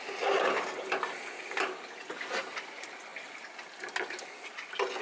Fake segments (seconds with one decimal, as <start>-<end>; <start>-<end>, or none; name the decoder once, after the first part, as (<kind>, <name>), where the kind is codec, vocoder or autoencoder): none